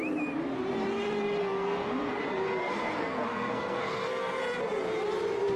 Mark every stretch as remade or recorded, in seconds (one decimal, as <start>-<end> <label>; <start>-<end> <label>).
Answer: 0.0-1.4 recorded; 1.4-2.2 remade; 2.2-2.6 recorded; 2.6-4.4 remade; 4.4-5.6 recorded